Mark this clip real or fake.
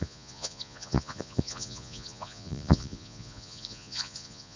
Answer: fake